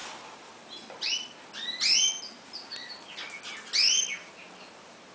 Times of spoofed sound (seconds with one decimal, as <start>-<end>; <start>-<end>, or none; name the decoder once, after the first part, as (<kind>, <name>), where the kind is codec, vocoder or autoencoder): none